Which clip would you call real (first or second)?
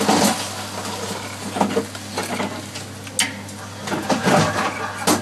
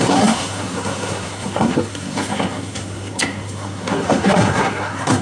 first